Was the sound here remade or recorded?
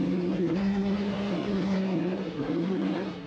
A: remade